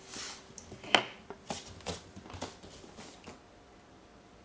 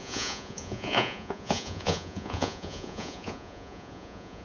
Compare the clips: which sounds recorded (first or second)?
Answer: first